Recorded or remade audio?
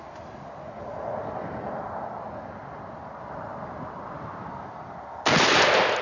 recorded